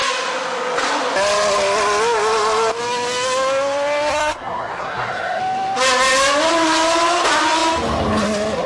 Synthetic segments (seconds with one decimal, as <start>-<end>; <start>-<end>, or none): 4.1-5.4